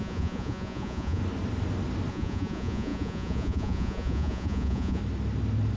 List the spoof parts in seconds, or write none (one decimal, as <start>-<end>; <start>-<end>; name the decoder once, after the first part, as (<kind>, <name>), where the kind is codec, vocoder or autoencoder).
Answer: 0.0-1.2 (vocoder, Vocos); 2.1-5.0